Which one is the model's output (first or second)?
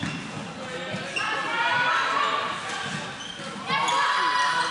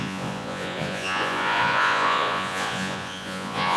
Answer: second